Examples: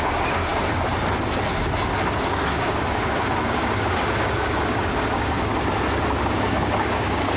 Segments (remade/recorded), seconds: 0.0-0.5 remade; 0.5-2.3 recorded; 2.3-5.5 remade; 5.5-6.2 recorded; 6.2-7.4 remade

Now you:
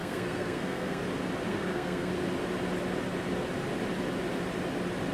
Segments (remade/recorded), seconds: 0.0-1.0 remade; 1.0-1.5 recorded; 1.5-2.1 remade; 2.1-5.1 recorded

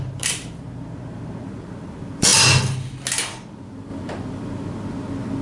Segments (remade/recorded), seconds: 0.0-2.3 remade; 2.3-3.5 recorded; 3.5-3.9 remade; 3.9-5.4 recorded

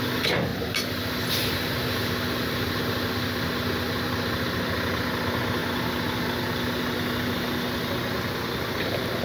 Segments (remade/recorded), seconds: 0.0-9.2 recorded

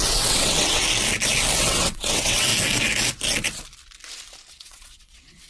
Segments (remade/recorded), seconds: 0.0-0.8 remade; 0.8-1.6 recorded; 1.6-2.5 remade; 2.5-4.5 recorded; 4.5-5.5 remade